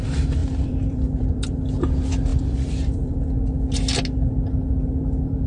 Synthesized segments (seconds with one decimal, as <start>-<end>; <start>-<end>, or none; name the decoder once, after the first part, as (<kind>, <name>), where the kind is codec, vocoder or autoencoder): 0.4-1.7 (vocoder, BigVGAN v2); 2.3-3.3